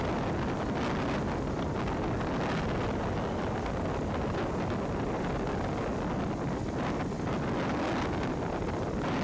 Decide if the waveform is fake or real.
real